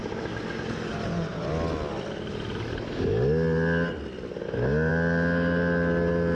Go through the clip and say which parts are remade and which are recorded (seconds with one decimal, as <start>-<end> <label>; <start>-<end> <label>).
0.0-6.3 recorded